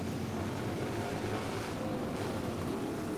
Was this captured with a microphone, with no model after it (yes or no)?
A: yes